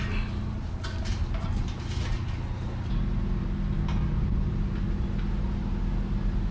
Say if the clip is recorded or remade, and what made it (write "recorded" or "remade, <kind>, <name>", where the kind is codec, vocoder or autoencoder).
recorded